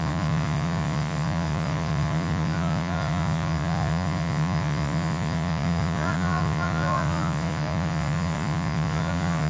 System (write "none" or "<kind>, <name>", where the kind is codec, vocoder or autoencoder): vocoder, Vocos